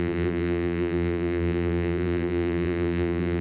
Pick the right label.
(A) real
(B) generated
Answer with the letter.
B